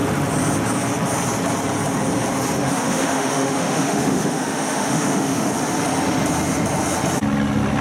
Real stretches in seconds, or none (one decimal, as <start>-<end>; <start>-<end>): 0.0-2.6; 5.5-7.8